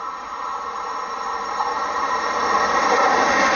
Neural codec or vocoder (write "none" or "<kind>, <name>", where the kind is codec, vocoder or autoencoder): none